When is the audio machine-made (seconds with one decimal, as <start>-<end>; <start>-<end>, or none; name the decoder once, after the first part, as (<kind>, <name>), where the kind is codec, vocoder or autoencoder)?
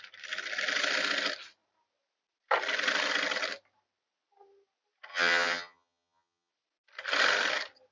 5.1-6.5 (vocoder, HiFi-GAN)